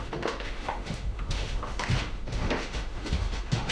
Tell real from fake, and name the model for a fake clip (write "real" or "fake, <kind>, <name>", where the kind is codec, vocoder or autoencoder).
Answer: fake, autoencoder, DAC-VAE